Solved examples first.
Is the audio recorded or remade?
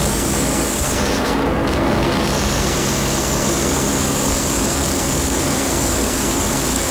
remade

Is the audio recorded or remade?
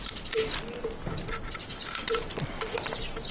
remade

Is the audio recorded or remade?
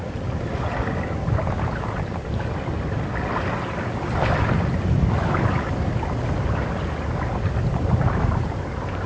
recorded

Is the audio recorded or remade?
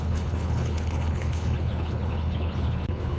remade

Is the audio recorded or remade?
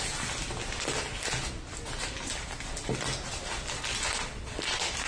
recorded